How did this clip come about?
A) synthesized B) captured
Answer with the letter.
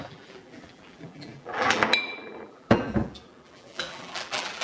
A